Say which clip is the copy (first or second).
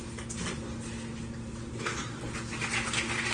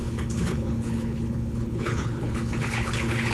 second